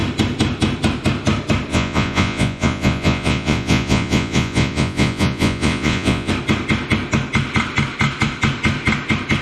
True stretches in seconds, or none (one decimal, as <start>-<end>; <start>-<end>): 0.0-1.7; 6.3-9.4